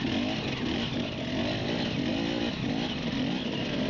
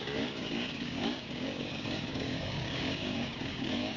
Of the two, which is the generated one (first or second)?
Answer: second